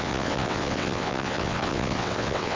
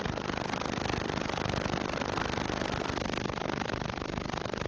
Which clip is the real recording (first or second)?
second